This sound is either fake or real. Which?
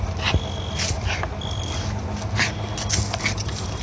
real